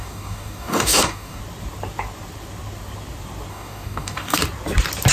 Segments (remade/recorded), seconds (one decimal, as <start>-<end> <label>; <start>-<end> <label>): 0.0-1.4 remade; 1.4-3.5 recorded; 3.5-4.4 remade; 4.4-5.1 recorded